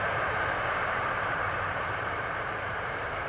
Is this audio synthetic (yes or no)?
yes